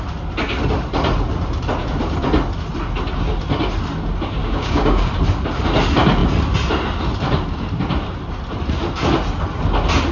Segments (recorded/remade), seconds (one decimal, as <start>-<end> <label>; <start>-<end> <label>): 0.0-4.4 recorded; 4.4-5.1 remade; 5.1-10.1 recorded